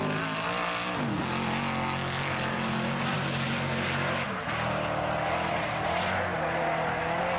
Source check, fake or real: real